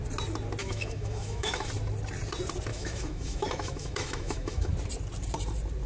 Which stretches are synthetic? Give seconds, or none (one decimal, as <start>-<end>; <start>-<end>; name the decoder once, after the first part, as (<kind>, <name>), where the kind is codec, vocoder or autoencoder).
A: 0.6-1.7 (autoencoder, DAC-VAE); 2.7-4.7